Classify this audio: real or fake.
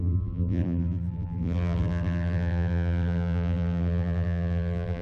fake